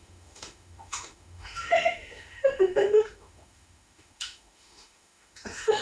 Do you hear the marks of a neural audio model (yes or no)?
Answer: yes